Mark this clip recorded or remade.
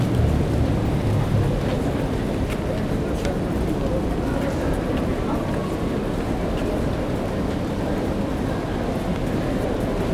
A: recorded